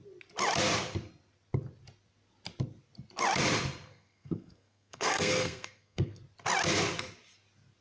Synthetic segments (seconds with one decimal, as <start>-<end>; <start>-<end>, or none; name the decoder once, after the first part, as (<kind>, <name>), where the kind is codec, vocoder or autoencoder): 3.9-6.2 (codec, SNAC)